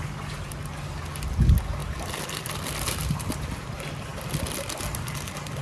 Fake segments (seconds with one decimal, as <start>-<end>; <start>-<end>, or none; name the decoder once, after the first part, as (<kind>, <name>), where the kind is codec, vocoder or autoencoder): 1.8-3.3 (vocoder, BigVGAN v2)